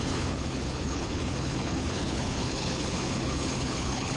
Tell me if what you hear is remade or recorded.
remade